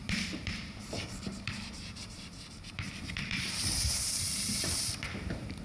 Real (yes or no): no